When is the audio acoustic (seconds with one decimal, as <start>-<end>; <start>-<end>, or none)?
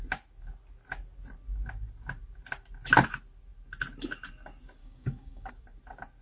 0.0-4.8; 5.5-6.2